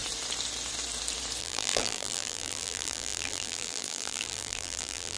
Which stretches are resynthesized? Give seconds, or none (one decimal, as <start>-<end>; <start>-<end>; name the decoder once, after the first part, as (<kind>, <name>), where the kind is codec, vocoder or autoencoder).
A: 1.4-5.2 (vocoder, BigVGAN v2)